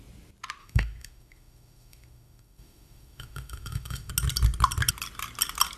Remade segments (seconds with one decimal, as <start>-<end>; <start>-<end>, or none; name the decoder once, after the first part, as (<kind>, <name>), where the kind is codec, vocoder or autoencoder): 0.6-4.1 (autoencoder, DAC-VAE)